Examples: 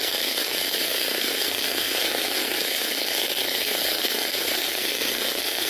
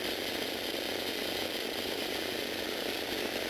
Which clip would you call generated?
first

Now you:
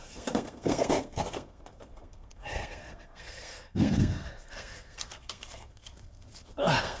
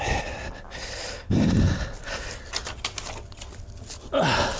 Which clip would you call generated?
first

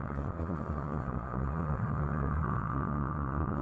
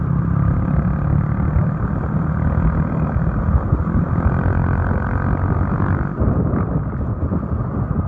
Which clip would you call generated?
first